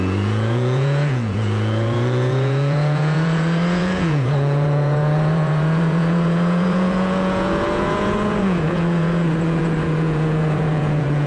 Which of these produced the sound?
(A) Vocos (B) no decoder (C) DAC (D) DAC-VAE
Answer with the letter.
A